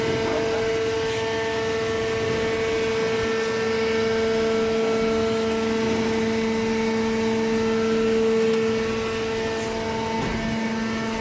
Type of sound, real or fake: real